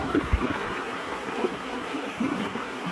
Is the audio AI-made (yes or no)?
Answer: yes